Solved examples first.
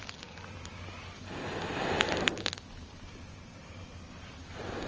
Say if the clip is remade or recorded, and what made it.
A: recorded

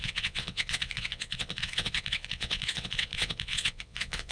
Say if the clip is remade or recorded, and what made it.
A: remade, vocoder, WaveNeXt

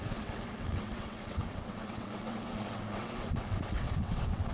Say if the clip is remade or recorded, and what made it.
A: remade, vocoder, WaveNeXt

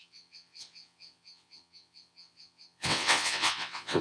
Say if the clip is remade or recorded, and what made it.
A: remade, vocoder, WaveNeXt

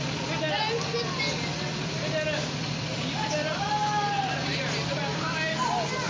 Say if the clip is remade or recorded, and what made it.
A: recorded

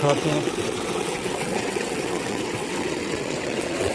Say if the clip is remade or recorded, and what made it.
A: remade, vocoder, WaveNeXt